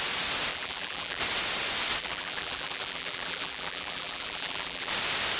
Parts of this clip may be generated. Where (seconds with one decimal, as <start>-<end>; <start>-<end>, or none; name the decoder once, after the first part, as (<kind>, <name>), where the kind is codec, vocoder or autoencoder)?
0.5-1.2 (vocoder, BigVGAN v2); 2.0-4.9